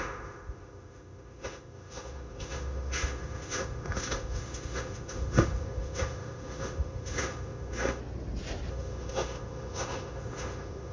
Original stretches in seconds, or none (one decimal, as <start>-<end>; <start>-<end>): 8.0-8.7